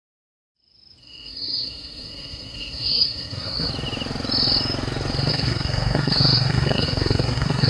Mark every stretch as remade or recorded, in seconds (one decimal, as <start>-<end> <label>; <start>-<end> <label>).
0.0-1.0 recorded; 1.0-3.7 remade; 3.7-5.3 recorded; 5.3-7.7 remade